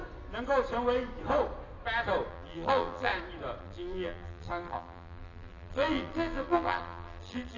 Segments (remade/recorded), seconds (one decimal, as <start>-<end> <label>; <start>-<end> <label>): 0.0-2.3 recorded; 2.3-3.1 remade; 3.1-3.6 recorded; 3.6-7.6 remade